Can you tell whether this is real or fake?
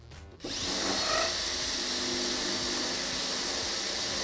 real